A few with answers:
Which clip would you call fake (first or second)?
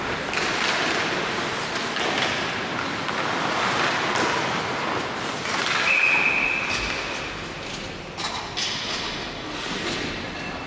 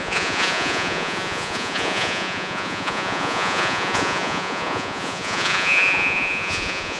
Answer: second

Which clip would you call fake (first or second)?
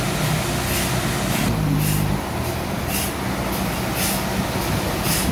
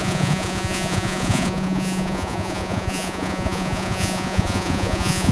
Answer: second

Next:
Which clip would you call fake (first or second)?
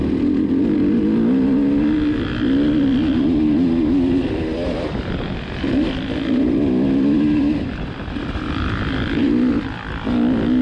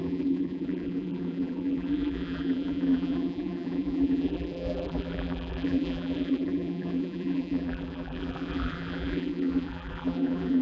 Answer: second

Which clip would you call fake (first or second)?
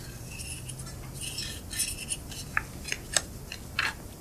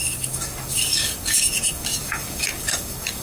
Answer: second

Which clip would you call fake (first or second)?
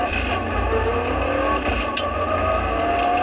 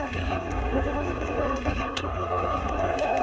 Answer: second